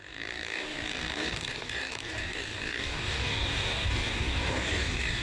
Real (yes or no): no